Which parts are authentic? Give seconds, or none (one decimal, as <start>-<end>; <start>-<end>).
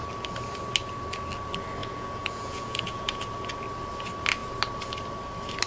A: 0.0-1.8; 3.2-5.7